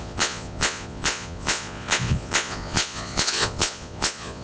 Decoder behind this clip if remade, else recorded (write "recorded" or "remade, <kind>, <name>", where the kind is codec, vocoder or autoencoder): remade, vocoder, Vocos